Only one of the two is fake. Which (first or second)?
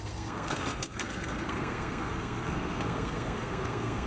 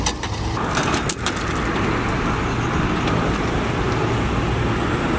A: first